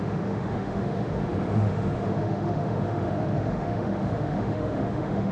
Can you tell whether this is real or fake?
fake